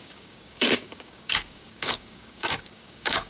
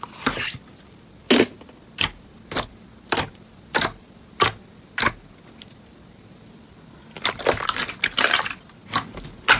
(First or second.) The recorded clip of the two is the second